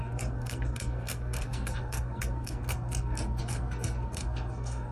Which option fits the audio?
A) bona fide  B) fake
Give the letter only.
B